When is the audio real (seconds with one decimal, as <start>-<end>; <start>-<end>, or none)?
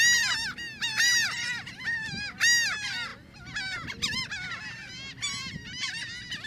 0.0-0.9; 1.7-6.5